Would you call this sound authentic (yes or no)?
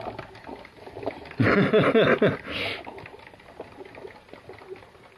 yes